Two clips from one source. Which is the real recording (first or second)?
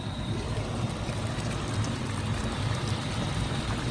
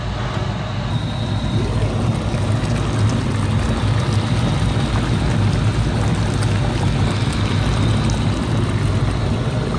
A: second